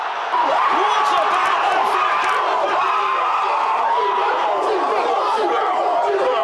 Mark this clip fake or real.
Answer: real